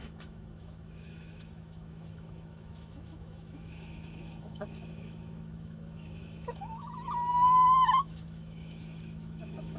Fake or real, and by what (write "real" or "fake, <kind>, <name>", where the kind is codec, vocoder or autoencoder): fake, autoencoder, DAC-VAE